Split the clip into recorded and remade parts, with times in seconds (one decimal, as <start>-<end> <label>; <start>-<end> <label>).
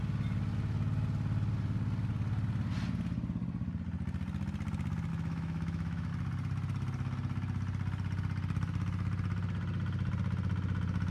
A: 0.0-5.1 recorded; 5.1-6.1 remade; 6.1-11.1 recorded